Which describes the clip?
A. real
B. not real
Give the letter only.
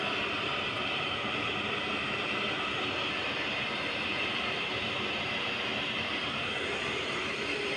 B